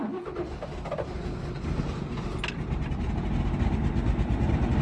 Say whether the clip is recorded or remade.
recorded